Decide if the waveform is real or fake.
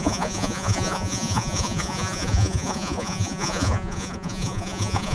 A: fake